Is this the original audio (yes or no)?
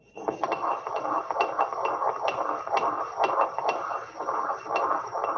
yes